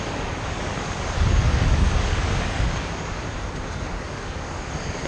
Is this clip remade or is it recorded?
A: remade